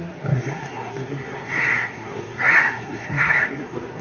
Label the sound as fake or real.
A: fake